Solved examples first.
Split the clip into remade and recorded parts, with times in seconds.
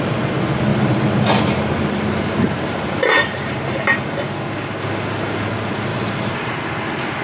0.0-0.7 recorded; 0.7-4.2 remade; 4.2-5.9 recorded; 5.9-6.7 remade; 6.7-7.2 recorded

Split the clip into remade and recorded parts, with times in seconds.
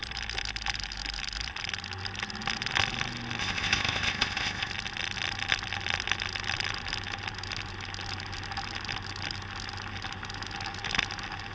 0.0-3.4 recorded; 3.4-4.7 remade; 4.7-11.5 recorded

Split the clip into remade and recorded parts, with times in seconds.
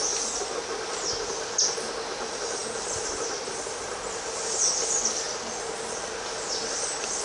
0.0-7.2 recorded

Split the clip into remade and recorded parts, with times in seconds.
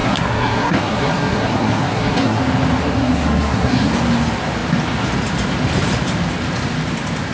0.0-2.4 remade; 2.4-2.8 recorded; 2.8-3.9 remade; 3.9-7.3 recorded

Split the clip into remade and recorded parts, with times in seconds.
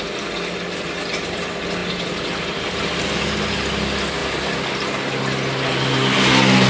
0.0-6.7 recorded